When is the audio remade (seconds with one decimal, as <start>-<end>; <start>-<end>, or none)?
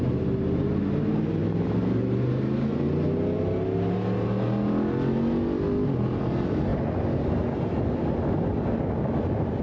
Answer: none